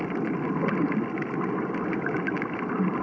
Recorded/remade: recorded